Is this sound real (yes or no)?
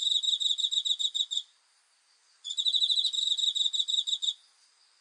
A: yes